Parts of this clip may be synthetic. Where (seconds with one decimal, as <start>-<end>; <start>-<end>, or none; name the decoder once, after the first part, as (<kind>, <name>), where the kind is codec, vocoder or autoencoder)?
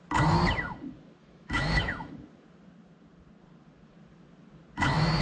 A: 1.2-2.1 (autoencoder, DAC-VAE)